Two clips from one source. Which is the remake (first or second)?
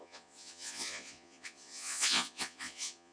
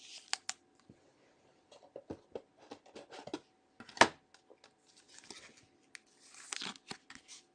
first